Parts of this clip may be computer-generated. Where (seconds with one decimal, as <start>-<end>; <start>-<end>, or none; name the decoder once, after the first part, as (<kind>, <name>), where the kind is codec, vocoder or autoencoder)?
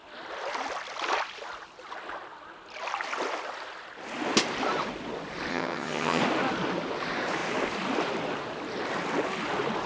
5.5-6.2 (vocoder, HiFi-GAN)